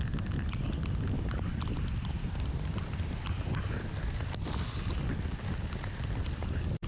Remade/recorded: recorded